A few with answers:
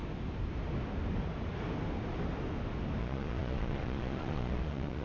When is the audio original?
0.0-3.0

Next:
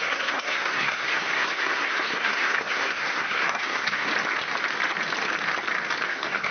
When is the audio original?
4.1-6.1